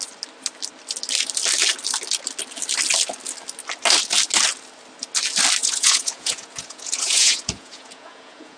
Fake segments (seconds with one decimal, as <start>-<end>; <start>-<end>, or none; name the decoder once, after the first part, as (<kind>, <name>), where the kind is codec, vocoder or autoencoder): 5.6-8.6 (vocoder, Vocos)